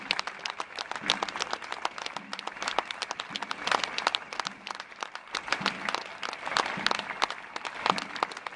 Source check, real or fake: real